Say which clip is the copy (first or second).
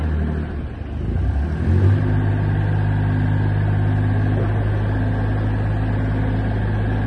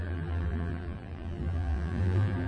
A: second